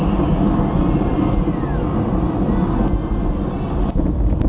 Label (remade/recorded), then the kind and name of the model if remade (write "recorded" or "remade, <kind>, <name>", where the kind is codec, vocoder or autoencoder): recorded